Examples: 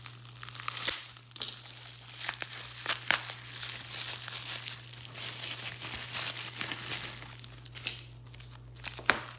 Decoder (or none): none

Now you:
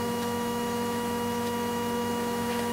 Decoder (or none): autoencoder, DAC-VAE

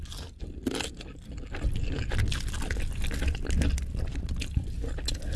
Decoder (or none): none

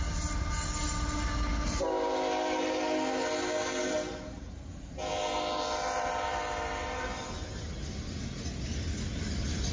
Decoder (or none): none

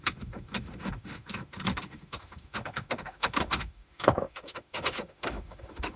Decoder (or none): autoencoder, DAC-VAE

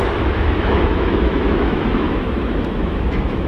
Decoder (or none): autoencoder, DAC-VAE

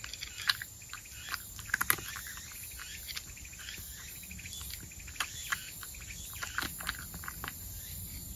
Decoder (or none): none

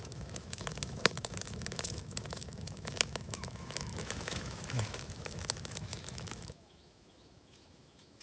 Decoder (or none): autoencoder, DAC-VAE